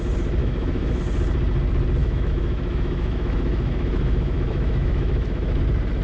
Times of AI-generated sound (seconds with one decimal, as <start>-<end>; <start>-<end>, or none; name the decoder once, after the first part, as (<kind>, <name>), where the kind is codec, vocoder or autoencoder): 0.4-1.0 (autoencoder, DAC-VAE); 2.0-5.6